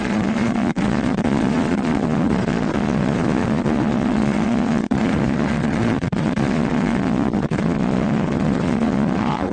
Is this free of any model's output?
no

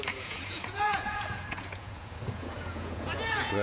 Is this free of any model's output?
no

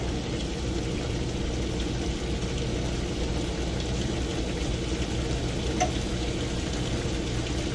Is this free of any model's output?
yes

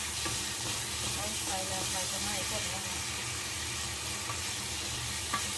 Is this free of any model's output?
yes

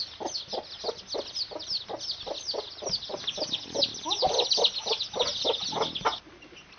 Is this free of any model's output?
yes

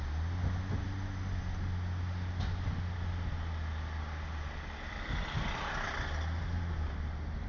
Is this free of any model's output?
yes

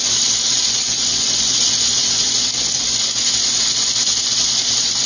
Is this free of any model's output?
no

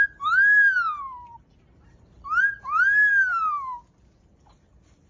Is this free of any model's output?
yes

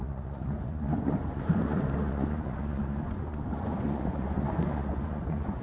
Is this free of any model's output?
no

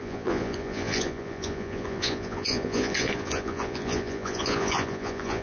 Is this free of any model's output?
no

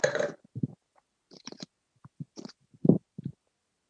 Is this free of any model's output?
yes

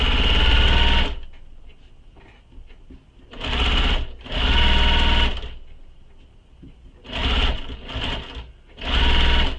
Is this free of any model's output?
yes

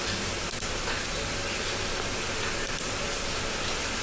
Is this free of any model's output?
yes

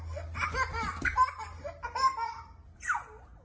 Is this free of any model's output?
yes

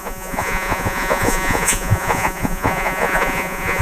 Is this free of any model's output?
no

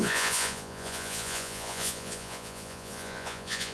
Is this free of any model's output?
no